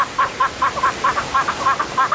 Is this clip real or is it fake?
real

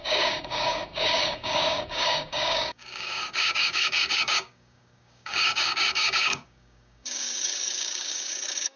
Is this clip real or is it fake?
fake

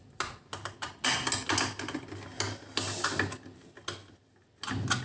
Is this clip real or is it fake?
real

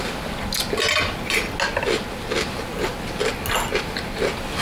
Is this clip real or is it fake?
real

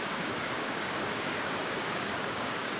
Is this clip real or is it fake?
fake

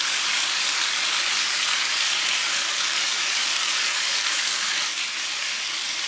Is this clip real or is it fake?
fake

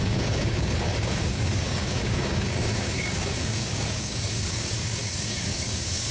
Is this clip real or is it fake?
fake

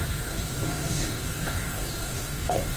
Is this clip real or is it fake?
fake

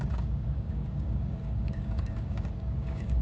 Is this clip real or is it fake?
fake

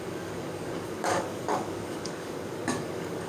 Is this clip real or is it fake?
fake